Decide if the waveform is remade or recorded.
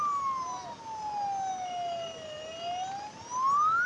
recorded